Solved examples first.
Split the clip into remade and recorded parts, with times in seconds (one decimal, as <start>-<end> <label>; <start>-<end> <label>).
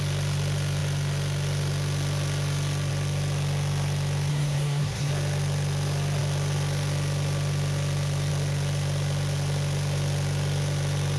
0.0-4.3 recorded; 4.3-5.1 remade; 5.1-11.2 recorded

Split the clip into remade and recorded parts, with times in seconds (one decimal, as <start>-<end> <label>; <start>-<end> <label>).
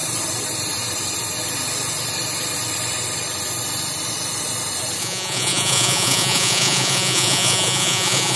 0.0-5.0 recorded; 5.0-8.4 remade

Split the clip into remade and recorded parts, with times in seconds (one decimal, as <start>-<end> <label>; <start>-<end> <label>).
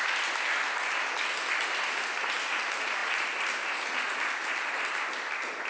0.0-5.7 recorded